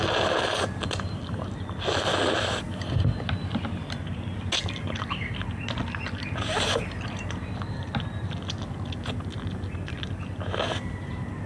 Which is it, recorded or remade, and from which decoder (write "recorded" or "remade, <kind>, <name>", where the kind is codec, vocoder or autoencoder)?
recorded